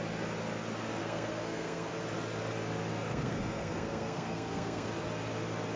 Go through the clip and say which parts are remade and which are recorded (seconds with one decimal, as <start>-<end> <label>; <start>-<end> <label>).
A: 0.0-1.0 recorded; 1.0-1.9 remade; 1.9-2.9 recorded; 2.9-4.9 remade; 4.9-5.8 recorded